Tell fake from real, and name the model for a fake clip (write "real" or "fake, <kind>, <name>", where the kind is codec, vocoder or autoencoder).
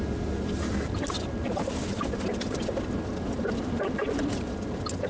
real